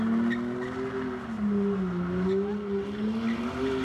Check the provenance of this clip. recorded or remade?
recorded